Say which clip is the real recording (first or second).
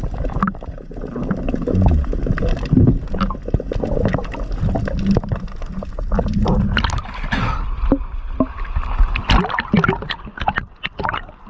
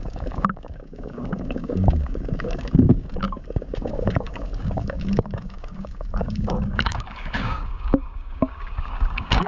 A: first